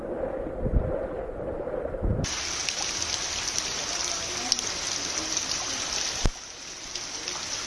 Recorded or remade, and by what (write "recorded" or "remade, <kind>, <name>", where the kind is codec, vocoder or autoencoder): recorded